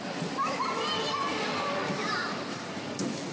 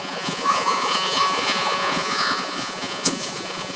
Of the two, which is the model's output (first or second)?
second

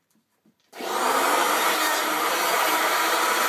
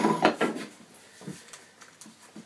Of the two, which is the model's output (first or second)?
first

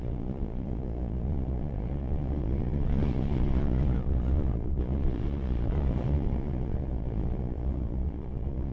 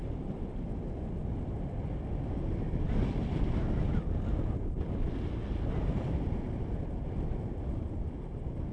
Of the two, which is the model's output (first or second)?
first